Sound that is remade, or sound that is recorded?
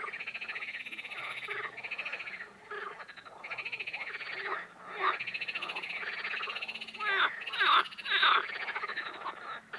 recorded